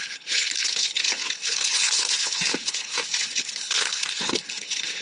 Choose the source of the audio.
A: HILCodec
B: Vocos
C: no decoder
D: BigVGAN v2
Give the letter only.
A